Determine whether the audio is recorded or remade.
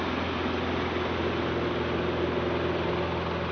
recorded